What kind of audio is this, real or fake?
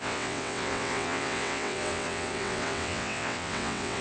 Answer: fake